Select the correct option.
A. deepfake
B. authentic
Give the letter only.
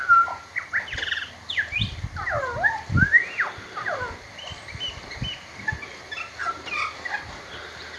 B